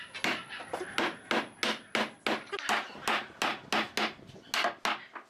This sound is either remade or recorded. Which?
recorded